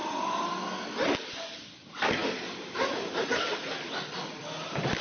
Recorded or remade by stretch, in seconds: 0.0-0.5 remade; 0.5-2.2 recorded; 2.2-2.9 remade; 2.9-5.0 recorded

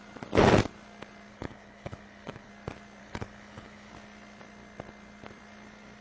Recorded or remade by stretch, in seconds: 0.0-1.3 recorded; 1.3-2.5 remade; 2.5-3.0 recorded; 3.0-3.9 remade; 3.9-6.0 recorded

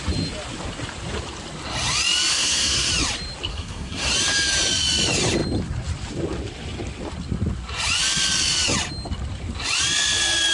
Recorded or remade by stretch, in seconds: 0.0-2.3 recorded; 2.3-2.9 remade; 2.9-3.5 recorded; 3.5-4.1 remade; 4.1-10.5 recorded

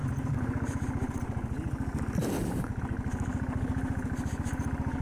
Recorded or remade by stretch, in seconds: 0.0-5.0 recorded

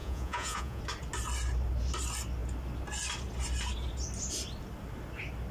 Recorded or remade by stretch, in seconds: 0.0-0.8 remade; 0.8-5.5 recorded

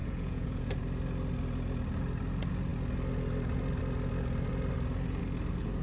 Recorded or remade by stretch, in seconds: 0.0-0.7 remade; 0.7-5.8 recorded

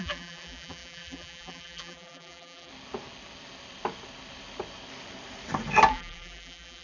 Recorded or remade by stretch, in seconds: 0.0-2.7 remade; 2.7-5.9 recorded; 5.9-6.8 remade